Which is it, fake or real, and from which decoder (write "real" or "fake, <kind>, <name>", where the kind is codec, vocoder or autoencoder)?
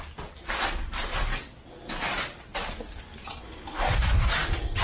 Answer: real